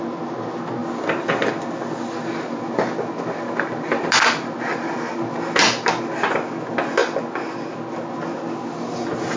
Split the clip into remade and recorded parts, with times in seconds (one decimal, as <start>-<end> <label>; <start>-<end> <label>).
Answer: 0.0-9.4 recorded